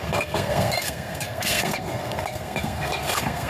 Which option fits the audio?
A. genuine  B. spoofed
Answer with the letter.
B